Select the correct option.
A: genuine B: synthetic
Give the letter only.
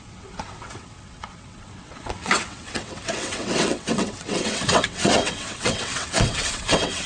B